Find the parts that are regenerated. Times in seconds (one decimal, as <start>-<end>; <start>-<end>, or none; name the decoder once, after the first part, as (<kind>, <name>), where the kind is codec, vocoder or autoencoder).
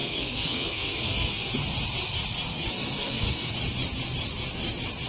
0.0-1.5 (codec, SNAC); 2.5-3.5